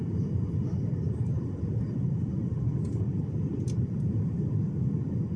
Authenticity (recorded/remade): recorded